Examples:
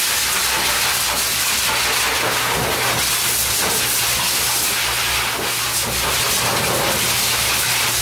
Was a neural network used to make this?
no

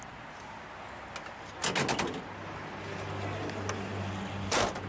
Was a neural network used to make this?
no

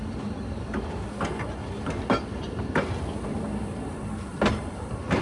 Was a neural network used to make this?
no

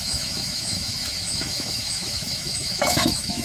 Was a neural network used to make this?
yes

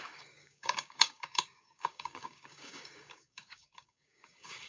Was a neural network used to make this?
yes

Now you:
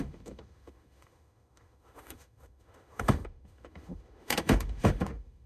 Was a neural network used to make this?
yes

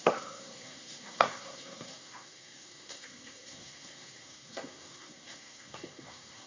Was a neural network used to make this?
yes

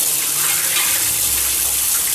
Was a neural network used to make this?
yes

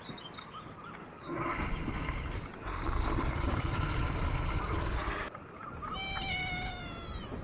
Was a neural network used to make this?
no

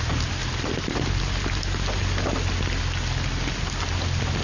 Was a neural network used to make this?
no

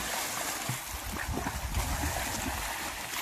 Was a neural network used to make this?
no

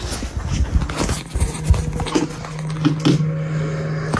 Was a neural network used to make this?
no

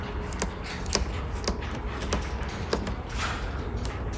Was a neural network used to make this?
no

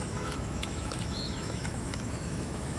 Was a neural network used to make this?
yes